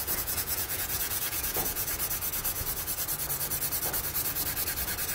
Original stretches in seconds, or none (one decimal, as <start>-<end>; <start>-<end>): 1.9-5.1